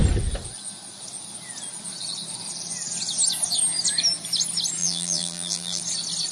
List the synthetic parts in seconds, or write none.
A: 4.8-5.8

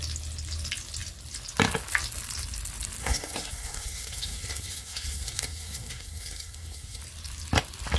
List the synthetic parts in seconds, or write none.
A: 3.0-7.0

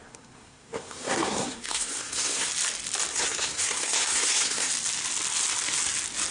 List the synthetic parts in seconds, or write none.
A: 0.0-2.5; 3.1-4.7